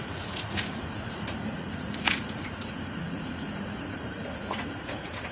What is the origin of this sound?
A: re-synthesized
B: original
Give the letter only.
A